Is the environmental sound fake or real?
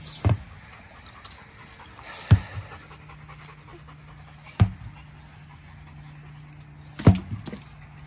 real